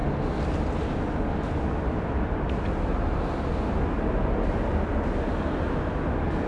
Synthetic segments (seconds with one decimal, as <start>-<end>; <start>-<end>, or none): none